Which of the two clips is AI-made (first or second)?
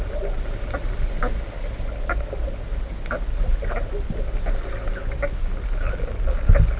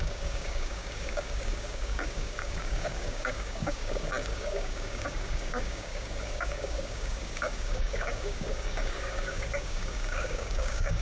second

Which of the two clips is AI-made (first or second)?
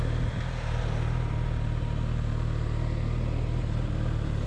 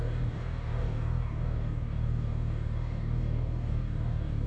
second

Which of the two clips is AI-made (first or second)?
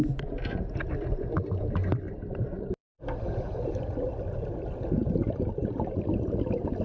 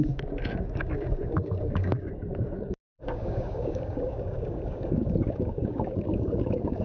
second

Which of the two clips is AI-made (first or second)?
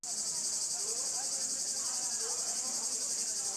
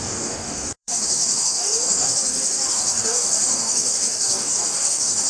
second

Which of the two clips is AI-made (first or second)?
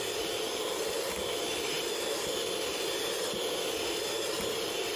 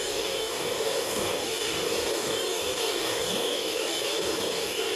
second